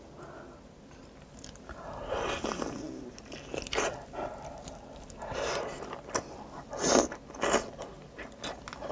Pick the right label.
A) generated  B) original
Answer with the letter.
B